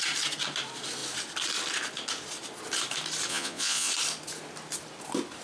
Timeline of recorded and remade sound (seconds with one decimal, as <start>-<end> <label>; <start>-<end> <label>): 0.0-3.3 recorded; 3.3-3.9 remade; 3.9-5.4 recorded